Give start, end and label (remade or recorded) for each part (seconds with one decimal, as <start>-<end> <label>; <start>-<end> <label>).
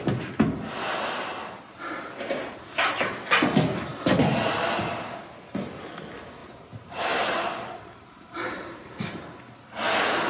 0.0-6.4 recorded; 6.4-9.2 remade; 9.2-10.3 recorded